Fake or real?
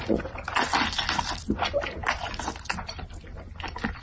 real